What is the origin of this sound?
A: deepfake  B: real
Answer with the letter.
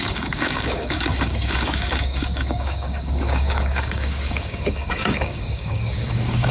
A